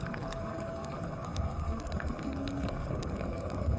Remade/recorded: remade